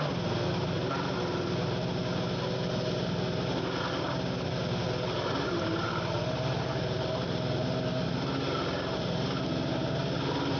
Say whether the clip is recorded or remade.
recorded